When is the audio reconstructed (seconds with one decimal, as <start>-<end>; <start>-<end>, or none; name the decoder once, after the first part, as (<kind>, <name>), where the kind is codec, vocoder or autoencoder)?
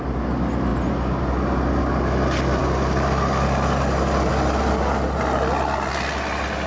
none